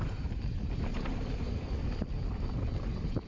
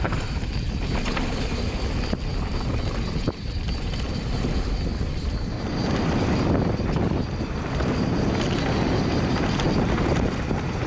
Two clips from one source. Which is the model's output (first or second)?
first